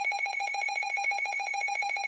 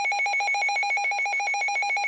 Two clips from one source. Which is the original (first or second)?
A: second